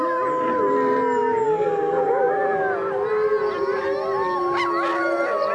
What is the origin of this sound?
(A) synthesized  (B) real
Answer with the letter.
B